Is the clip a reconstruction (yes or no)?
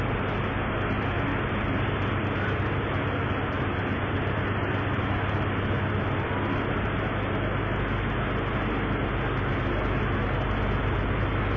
no